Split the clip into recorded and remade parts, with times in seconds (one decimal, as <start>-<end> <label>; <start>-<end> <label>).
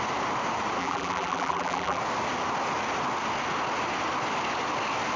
0.0-0.8 recorded; 0.8-2.0 remade; 2.0-5.2 recorded